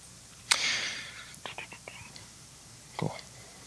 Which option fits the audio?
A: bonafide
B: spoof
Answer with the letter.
B